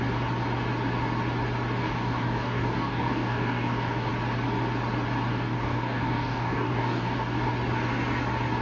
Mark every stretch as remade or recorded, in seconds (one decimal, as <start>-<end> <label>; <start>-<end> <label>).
0.0-1.8 recorded; 1.8-4.1 remade; 4.1-5.3 recorded; 5.3-7.5 remade; 7.5-8.6 recorded